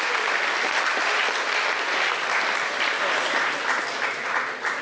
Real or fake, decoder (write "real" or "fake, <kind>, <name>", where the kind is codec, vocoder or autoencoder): real